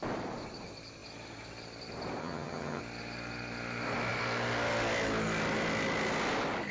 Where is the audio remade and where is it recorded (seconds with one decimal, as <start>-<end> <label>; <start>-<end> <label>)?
0.0-2.2 recorded; 2.2-2.8 remade; 2.8-6.7 recorded

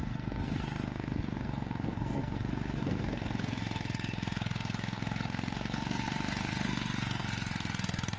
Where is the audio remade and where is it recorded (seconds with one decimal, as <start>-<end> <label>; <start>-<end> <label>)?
0.0-8.2 remade

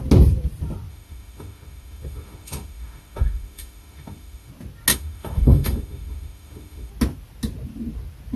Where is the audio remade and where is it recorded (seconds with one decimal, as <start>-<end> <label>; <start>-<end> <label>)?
0.0-0.9 recorded; 0.9-4.5 remade; 4.5-4.9 recorded; 4.9-6.9 remade; 6.9-8.4 recorded

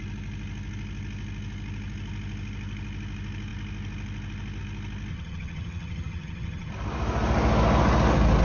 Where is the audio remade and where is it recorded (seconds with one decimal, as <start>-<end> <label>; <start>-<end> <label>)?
0.0-5.1 recorded; 5.1-6.7 remade; 6.7-8.4 recorded